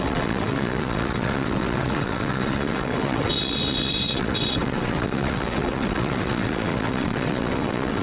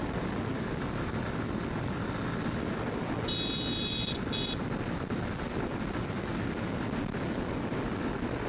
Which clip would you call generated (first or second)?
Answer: first